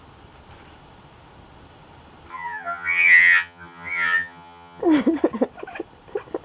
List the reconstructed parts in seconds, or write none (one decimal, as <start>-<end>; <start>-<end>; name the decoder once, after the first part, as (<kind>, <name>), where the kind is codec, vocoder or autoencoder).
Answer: 2.3-4.8 (vocoder, HiFi-GAN)